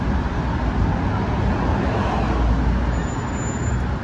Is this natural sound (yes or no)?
yes